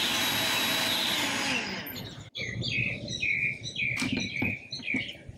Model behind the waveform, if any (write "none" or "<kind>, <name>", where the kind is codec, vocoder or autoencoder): none